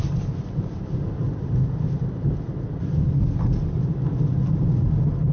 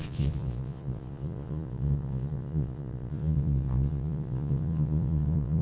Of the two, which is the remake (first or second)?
second